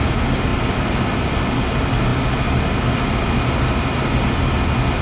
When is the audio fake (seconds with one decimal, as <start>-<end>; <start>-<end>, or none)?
0.5-1.4